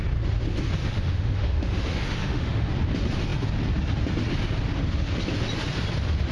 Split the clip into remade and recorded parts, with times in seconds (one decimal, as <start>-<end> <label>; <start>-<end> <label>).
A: 0.0-0.8 recorded; 0.8-2.7 remade; 2.7-6.3 recorded